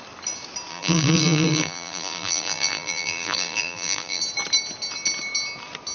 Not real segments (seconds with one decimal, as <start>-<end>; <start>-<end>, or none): 0.7-4.2